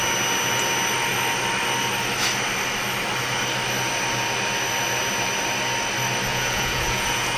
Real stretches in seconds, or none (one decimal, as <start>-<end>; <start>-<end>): 0.0-6.3

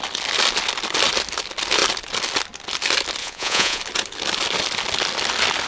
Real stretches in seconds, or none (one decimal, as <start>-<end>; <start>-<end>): 0.0-3.2; 3.8-5.7

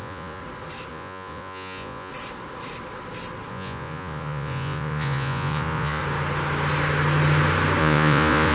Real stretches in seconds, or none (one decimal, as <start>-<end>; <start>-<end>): 0.4-0.9; 2.1-3.5; 6.0-7.8

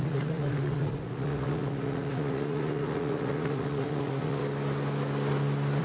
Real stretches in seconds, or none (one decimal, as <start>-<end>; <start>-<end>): 4.4-5.8

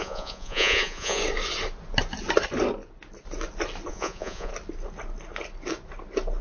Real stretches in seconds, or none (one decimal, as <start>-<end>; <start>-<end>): 1.2-3.9; 4.5-6.4